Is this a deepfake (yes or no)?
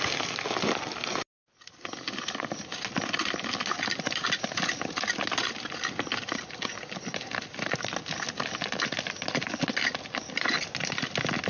no